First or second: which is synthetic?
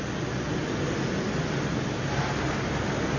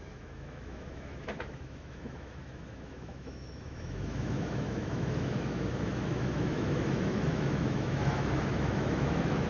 second